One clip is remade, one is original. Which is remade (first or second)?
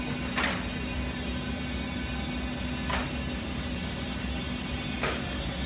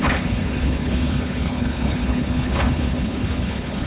second